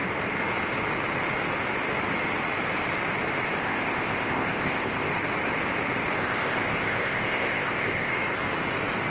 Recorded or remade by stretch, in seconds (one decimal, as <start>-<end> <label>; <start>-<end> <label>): 0.0-3.6 recorded; 3.6-5.1 remade; 5.1-6.2 recorded; 6.2-8.1 remade; 8.1-9.1 recorded